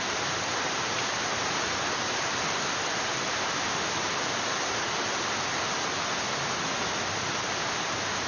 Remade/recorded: recorded